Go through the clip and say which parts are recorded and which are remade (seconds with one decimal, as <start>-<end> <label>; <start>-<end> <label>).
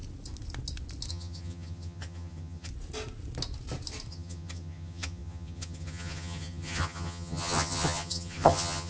0.0-1.1 recorded; 1.1-2.7 remade; 2.7-4.1 recorded; 4.1-8.9 remade